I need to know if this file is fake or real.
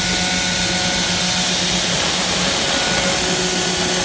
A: real